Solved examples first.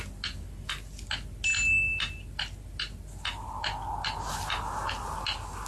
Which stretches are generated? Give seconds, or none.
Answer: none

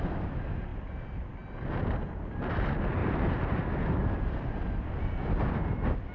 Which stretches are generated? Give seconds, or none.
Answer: 3.0-3.6

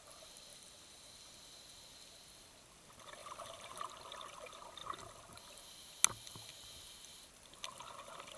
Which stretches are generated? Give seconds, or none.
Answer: 0.5-1.3; 3.2-3.8

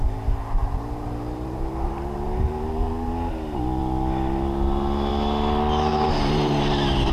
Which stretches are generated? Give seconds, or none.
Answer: 0.6-3.1; 5.9-7.1

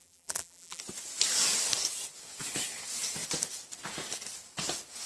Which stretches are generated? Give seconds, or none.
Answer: 0.0-0.8

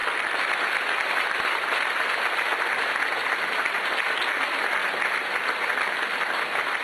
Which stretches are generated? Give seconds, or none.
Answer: 3.2-3.9

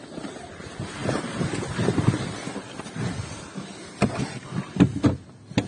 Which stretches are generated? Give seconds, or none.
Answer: 1.0-4.4

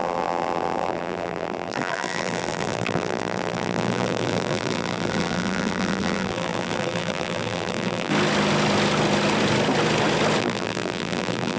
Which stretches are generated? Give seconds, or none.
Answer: 0.0-8.1; 10.4-11.6